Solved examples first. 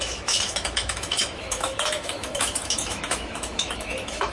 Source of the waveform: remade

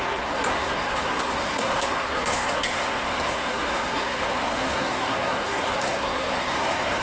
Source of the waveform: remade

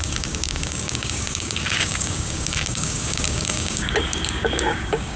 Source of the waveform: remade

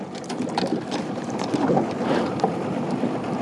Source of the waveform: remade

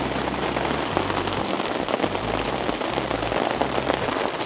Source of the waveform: recorded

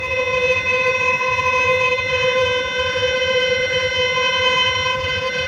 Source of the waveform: remade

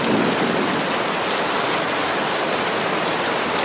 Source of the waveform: recorded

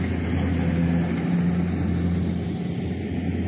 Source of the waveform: recorded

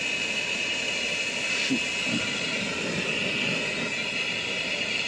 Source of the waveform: recorded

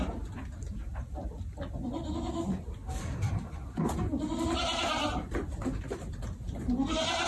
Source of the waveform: recorded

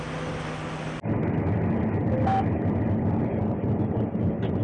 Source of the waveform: recorded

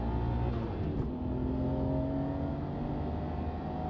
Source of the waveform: recorded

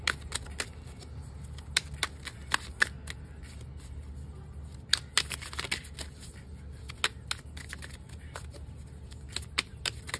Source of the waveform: recorded